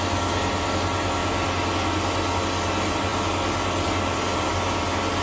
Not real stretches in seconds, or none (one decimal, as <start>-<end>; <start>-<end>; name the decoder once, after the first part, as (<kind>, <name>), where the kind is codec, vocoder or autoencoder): none